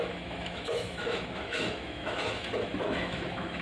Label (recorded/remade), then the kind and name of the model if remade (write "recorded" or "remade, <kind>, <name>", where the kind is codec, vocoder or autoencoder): remade, autoencoder, DAC-VAE